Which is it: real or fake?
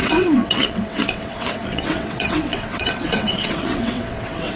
fake